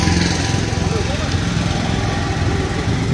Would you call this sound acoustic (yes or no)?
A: yes